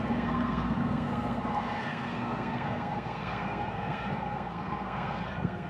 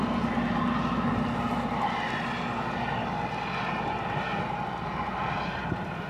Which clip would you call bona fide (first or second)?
second